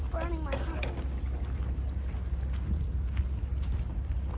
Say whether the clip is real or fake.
real